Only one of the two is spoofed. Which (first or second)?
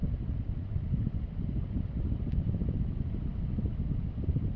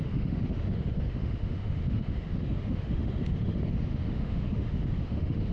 second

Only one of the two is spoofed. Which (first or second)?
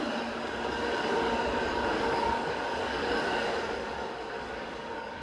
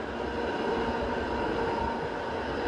first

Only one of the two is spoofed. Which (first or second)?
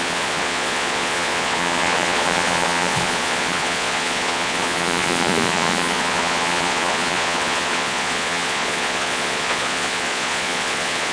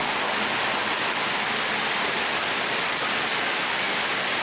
first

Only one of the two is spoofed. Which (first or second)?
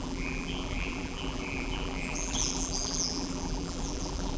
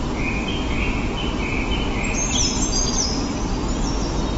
first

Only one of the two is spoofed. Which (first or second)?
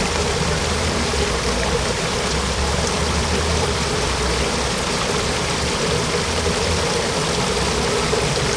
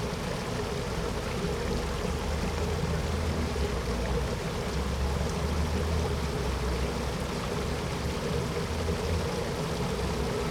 first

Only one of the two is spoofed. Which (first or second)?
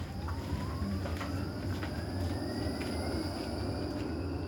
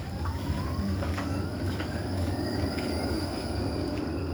second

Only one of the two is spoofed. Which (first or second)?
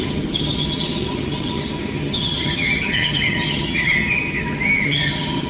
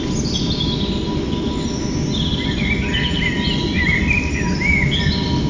first